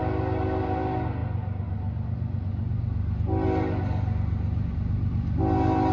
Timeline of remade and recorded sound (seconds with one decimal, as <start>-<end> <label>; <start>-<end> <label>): 0.0-5.9 recorded